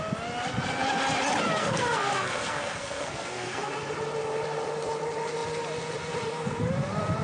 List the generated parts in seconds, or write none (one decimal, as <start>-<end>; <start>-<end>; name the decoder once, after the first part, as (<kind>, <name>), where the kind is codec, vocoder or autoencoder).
1.6-3.7 (codec, SNAC)

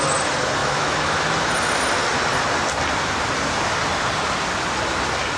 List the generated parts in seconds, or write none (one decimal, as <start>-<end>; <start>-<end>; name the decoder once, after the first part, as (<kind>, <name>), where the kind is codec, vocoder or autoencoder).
0.6-1.2 (autoencoder, DAC-VAE)